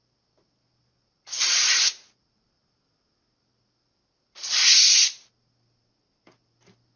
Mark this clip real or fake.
real